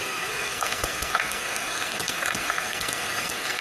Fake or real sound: fake